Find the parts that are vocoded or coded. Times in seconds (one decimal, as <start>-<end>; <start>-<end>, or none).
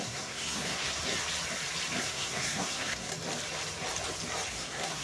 0.0-1.0; 2.0-3.1; 4.5-5.0